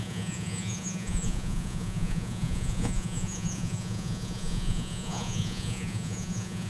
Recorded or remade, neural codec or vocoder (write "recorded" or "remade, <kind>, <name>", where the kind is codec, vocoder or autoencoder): remade, vocoder, Vocos